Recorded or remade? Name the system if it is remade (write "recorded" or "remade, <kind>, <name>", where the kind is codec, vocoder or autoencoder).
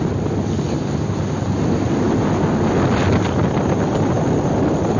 recorded